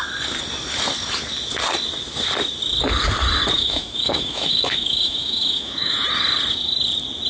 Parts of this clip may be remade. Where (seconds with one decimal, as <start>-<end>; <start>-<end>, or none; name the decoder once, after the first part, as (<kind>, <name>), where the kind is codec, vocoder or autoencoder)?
3.5-6.1 (autoencoder, DAC-VAE)